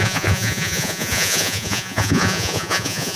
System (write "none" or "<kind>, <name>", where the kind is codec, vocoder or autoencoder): vocoder, Vocos